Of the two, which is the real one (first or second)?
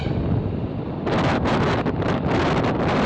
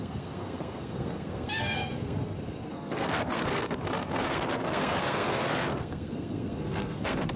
first